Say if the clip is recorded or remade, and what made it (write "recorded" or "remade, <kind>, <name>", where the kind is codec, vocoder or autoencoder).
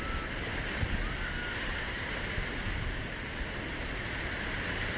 recorded